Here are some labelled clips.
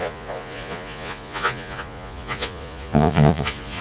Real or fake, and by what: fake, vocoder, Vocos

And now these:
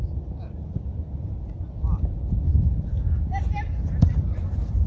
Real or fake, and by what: real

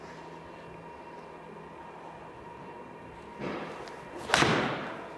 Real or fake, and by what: real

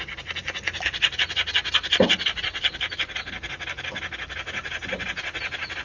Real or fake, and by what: real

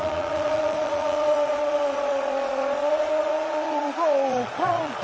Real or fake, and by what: fake, vocoder, Vocos